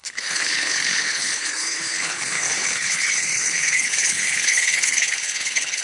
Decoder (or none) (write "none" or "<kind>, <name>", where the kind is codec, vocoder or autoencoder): codec, HILCodec